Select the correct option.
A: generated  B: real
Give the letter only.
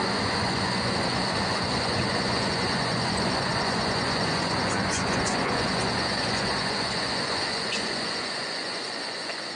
A